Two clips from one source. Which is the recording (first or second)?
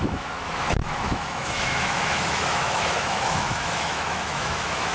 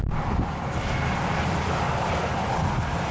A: second